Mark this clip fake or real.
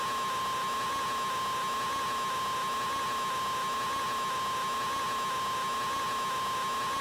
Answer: real